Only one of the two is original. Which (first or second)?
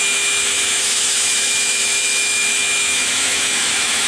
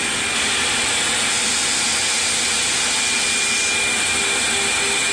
second